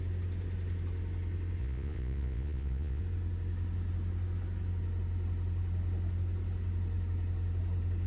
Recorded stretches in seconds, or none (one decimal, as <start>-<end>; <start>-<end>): 0.0-1.6; 3.0-8.1

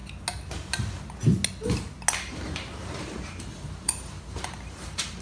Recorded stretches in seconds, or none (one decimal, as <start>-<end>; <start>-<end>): 0.0-2.3

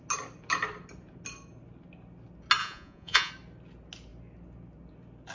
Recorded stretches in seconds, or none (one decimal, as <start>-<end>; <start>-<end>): 0.0-2.6; 3.3-5.3

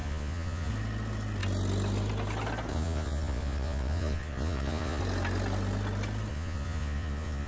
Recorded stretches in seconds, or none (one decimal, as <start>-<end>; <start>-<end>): 0.7-2.7; 5.0-6.3

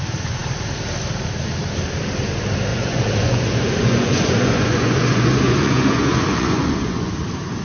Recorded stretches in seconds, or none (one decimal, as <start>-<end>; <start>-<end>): 0.0-2.7; 7.1-7.6

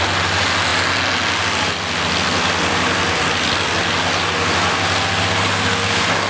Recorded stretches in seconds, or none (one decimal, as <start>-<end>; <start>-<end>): 0.0-6.3

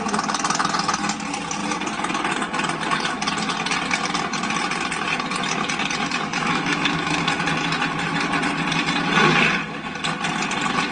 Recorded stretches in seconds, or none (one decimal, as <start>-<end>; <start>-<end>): 0.0-6.3; 7.2-10.9